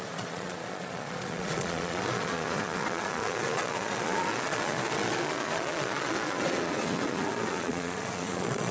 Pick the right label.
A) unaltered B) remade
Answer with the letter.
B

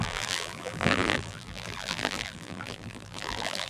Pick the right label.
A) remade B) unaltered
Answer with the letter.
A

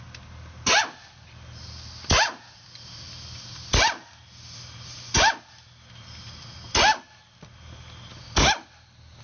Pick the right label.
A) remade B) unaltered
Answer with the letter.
B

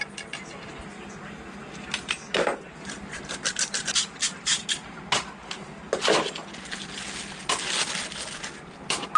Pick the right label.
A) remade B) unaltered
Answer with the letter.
B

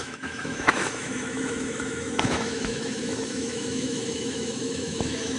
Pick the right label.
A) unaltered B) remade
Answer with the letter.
B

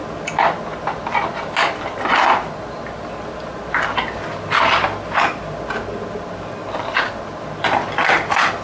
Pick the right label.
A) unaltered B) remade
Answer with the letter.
A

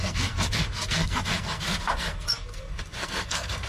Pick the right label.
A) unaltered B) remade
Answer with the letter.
B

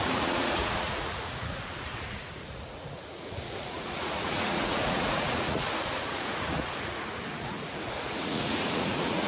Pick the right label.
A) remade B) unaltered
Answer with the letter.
A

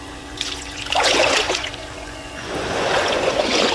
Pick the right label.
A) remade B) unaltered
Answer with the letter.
A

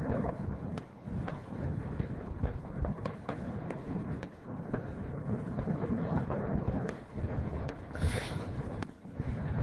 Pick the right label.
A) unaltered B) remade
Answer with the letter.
B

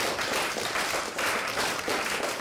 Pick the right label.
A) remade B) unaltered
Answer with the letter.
B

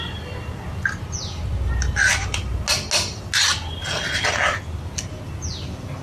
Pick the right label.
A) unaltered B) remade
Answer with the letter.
A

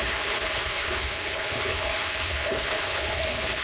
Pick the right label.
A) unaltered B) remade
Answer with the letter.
B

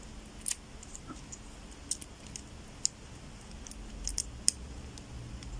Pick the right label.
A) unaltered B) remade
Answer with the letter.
A